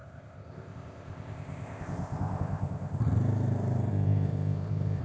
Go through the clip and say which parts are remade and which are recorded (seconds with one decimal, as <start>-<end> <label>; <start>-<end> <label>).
0.0-3.0 remade; 3.0-3.9 recorded; 3.9-5.0 remade